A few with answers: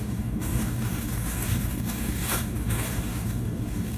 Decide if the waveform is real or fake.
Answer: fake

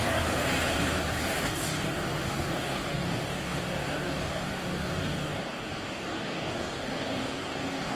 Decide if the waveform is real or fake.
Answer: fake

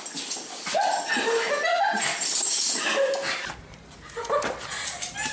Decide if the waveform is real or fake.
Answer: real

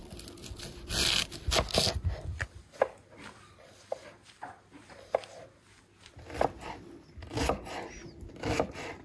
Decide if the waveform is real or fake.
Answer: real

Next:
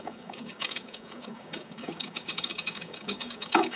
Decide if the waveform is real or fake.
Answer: fake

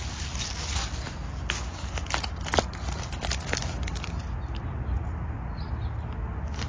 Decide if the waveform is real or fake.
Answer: real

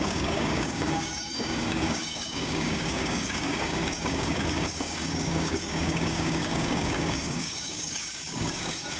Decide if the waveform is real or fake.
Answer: fake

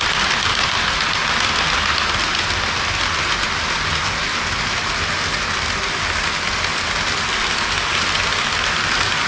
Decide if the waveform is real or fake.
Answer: real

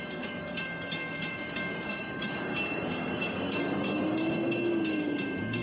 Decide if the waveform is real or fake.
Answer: fake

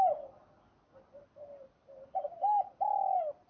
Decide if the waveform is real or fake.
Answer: real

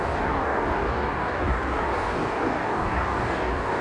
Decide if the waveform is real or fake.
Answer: fake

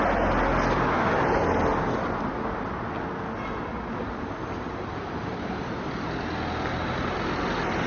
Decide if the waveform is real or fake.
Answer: real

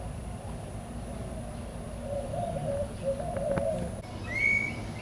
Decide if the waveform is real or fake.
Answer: real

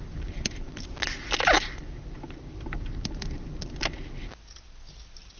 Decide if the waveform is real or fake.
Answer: real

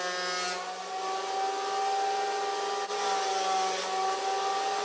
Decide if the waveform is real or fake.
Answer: real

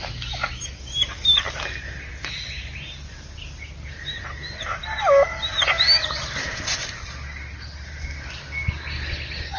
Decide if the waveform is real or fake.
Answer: real